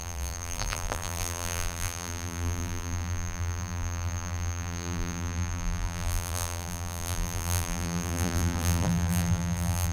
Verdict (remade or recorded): remade